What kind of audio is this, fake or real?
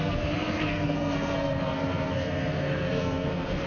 fake